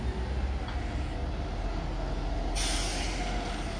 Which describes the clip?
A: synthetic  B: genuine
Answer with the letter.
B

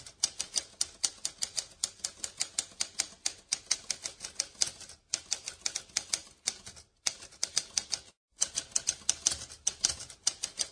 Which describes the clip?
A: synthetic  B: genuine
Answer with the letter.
B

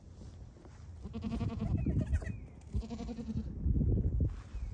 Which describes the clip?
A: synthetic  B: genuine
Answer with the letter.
B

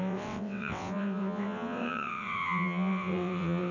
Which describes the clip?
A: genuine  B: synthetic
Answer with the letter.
B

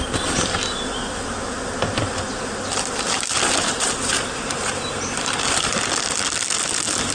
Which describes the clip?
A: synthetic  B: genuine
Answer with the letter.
B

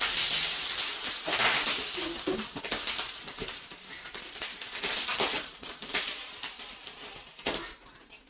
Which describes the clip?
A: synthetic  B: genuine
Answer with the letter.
B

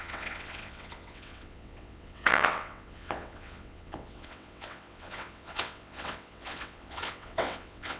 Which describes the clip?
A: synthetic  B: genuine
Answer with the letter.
A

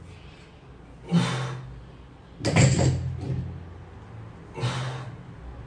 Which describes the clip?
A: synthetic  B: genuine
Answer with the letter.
B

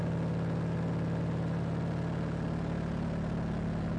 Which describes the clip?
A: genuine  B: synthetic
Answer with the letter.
A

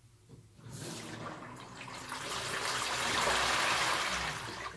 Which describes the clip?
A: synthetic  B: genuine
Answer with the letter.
B